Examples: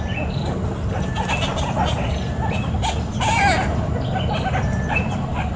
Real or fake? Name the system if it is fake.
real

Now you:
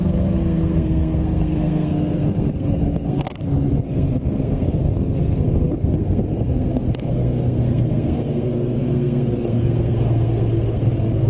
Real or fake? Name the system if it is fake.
fake, codec, SNAC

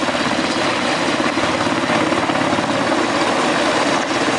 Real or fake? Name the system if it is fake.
real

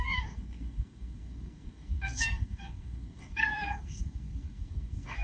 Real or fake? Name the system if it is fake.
fake, codec, SNAC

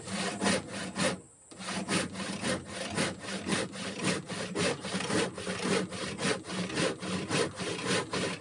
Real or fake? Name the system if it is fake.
real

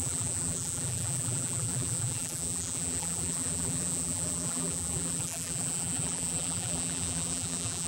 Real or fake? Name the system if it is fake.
fake, vocoder, BigVGAN v2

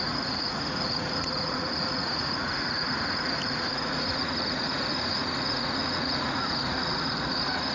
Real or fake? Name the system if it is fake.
fake, vocoder, Vocos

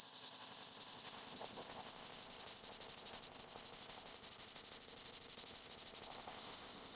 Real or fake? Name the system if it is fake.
fake, codec, ZipCodec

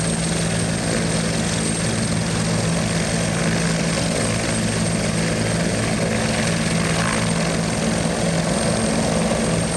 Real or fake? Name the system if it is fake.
real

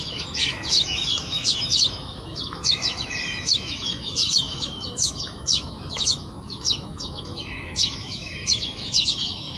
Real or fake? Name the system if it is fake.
fake, autoencoder, DAC-VAE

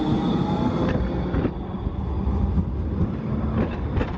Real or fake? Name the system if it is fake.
real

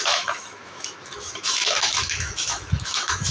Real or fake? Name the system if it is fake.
fake, autoencoder, DAC-VAE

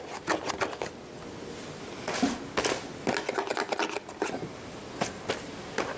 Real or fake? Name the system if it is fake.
real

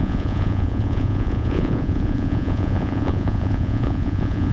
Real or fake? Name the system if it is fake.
fake, vocoder, Vocos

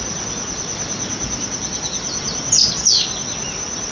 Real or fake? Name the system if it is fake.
real